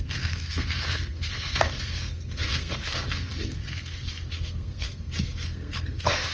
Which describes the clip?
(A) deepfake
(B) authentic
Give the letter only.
A